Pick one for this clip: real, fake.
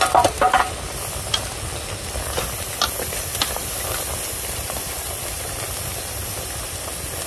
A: real